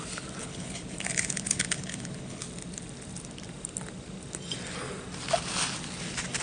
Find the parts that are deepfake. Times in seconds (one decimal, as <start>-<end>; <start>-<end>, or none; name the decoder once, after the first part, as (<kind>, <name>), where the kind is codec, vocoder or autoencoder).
0.4-2.4 (codec, HILCodec)